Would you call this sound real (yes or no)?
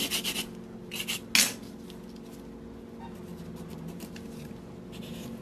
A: yes